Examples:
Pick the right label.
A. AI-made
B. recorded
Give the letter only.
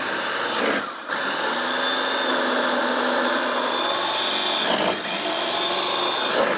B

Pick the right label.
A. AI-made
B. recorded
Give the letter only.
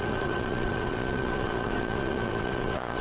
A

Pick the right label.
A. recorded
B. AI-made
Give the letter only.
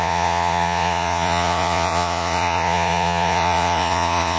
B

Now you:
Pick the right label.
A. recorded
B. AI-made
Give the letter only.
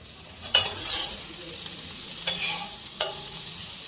B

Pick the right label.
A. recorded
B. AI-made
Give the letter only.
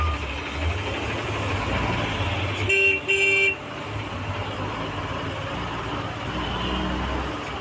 A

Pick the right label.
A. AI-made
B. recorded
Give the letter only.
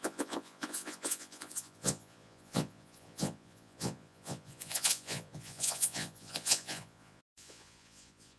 A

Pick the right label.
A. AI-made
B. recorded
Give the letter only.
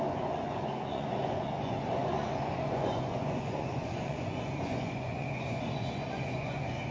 A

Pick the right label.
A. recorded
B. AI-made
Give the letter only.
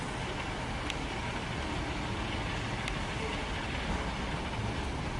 A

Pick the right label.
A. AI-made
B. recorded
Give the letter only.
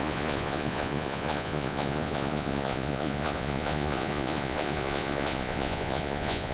A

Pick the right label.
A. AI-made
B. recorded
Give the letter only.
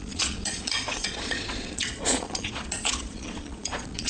A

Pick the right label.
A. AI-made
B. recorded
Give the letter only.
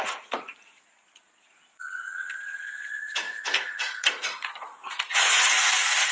A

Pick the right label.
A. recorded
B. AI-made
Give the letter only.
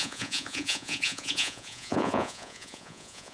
B